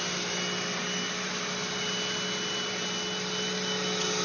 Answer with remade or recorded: recorded